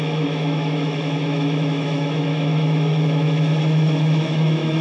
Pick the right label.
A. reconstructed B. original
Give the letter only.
A